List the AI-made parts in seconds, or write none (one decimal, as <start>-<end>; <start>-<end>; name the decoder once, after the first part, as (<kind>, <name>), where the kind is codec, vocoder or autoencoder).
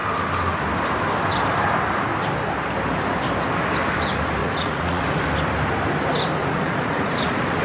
4.4-5.0 (vocoder, Vocos); 6.4-7.6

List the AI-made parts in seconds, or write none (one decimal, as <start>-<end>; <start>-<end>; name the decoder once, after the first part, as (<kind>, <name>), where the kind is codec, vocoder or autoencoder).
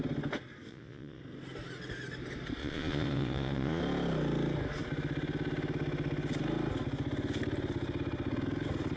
0.7-1.2 (vocoder, Vocos); 2.6-3.8